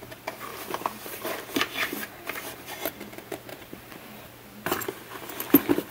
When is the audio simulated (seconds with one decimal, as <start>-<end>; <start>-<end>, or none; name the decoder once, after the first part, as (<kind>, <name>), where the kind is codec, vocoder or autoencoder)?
0.5-2.9 (vocoder, BigVGAN v2); 3.5-4.3